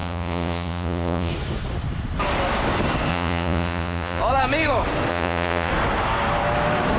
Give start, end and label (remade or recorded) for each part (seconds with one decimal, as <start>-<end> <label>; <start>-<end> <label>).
0.0-1.3 remade; 1.3-3.1 recorded; 3.1-4.2 remade; 4.2-5.1 recorded; 5.1-5.7 remade; 5.7-7.0 recorded